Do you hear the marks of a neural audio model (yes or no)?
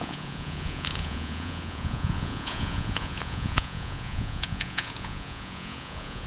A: yes